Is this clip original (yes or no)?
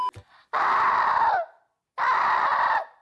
yes